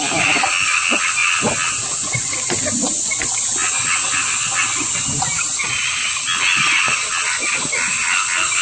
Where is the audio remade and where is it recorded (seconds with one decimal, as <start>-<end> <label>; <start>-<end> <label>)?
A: 0.0-8.6 recorded